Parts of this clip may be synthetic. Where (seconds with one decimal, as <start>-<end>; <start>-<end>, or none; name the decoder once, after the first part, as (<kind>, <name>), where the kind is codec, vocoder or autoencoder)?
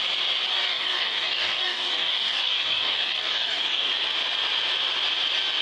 0.5-3.9 (codec, DAC)